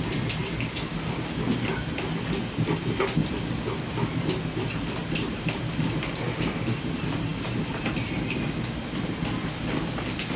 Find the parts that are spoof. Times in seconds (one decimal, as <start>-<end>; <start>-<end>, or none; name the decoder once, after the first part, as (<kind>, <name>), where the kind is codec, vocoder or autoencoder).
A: none